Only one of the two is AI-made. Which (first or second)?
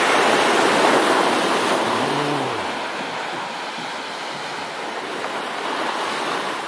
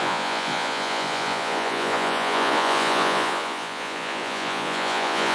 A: second